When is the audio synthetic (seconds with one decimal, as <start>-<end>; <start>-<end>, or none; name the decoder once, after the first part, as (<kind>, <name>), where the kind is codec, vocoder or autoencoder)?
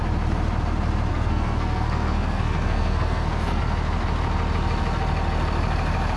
1.1-3.6 (codec, SNAC)